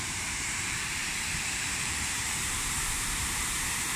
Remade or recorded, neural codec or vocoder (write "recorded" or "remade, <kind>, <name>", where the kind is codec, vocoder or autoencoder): remade, vocoder, BigVGAN v2